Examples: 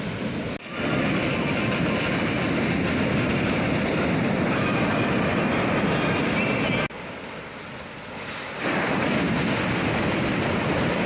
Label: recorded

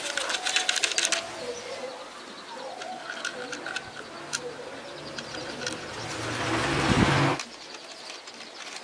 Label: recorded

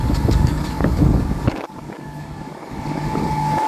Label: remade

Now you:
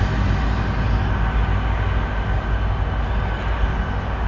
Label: recorded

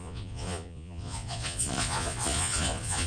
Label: remade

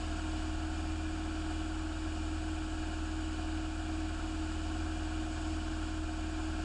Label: recorded